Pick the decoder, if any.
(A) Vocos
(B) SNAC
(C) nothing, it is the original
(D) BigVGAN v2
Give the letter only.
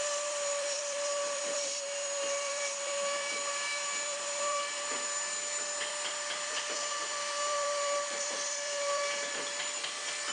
D